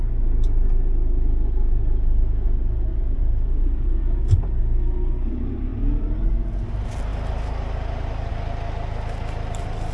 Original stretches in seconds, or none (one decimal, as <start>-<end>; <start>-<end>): 0.0-2.9; 4.6-9.9